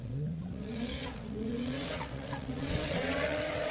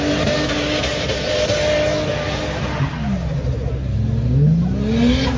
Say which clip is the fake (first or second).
first